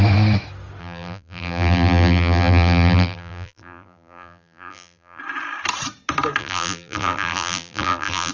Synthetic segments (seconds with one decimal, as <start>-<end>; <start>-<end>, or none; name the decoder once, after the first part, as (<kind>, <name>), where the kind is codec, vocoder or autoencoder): 0.8-5.2 (vocoder, BigVGAN v2); 6.4-8.3